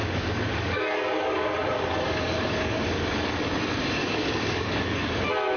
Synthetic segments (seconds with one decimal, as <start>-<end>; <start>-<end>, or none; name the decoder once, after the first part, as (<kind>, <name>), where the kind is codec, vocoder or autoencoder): 0.0-3.4 (codec, DAC); 4.0-5.1